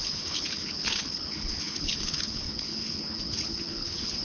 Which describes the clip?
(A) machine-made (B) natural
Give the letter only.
A